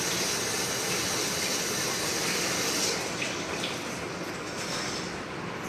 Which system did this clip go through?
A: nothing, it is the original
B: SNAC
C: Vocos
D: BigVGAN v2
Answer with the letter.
A